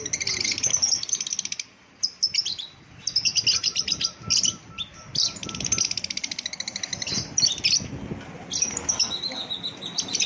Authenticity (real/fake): real